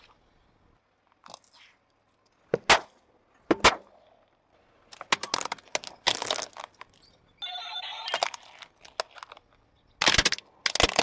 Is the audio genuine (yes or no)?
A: yes